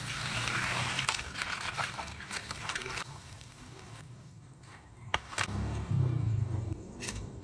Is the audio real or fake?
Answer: fake